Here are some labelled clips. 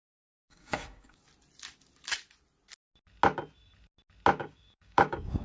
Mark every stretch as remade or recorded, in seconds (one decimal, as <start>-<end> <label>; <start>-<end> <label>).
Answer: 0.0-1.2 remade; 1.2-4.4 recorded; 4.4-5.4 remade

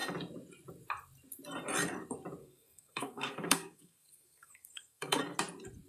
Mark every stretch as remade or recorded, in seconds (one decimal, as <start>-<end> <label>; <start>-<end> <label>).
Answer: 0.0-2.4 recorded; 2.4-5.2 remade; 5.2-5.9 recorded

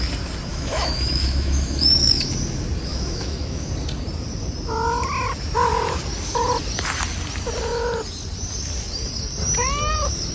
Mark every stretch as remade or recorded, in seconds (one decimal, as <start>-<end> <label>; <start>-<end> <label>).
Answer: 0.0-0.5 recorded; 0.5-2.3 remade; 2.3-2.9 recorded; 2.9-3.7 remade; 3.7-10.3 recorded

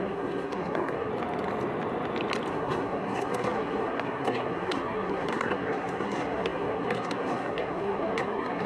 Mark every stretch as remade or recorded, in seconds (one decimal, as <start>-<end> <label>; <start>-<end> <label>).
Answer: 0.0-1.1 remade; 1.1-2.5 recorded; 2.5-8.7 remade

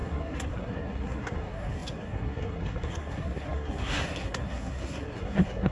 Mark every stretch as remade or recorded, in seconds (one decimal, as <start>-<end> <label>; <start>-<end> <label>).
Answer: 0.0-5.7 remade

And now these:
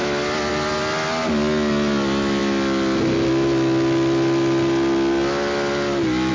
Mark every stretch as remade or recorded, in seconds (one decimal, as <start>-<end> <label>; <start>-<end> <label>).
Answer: 0.0-6.3 recorded